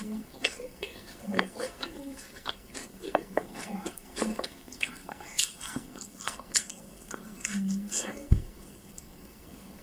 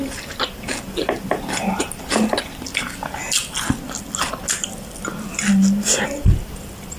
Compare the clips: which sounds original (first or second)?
second